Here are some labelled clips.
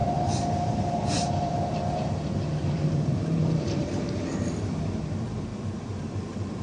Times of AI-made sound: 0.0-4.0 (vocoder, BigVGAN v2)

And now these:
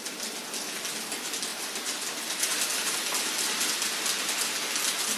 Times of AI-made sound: none

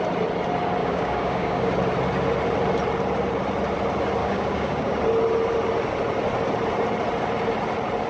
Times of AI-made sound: 0.8-1.7 (codec, DAC); 4.2-5.0

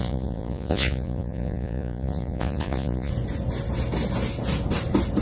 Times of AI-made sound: 0.0-3.1 (vocoder, Vocos)

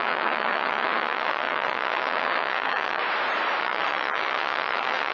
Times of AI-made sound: 0.0-3.0 (vocoder, WaveNeXt); 3.6-5.1